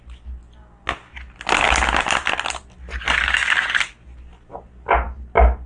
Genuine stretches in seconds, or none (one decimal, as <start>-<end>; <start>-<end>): 0.0-5.7